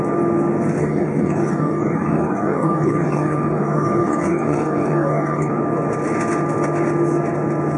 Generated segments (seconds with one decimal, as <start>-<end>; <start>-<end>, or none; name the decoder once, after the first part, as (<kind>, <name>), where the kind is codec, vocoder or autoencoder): 0.8-5.5 (codec, DAC)